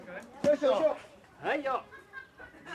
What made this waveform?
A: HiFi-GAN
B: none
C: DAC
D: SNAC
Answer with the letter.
B